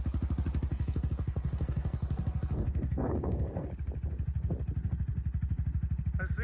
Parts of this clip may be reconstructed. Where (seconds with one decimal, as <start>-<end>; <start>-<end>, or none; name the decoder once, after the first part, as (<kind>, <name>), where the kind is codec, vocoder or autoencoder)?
0.7-3.7 (codec, SNAC)